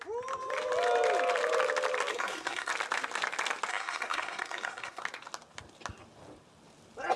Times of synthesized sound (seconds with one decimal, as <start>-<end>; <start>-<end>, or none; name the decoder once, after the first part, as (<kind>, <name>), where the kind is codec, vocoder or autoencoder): 2.1-2.7 (codec, SNAC); 3.7-5.0